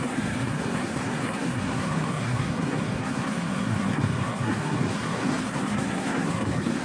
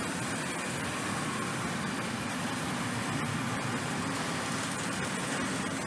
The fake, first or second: first